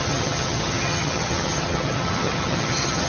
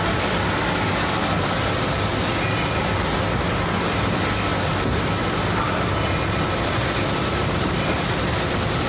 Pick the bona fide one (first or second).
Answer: second